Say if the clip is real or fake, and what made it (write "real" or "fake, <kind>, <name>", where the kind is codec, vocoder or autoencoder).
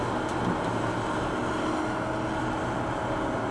real